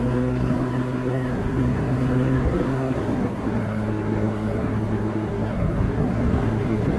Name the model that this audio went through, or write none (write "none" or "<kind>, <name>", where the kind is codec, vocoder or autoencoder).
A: codec, SNAC